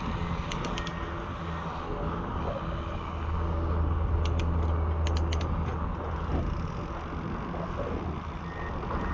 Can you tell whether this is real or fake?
real